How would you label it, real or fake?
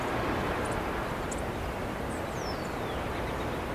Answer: real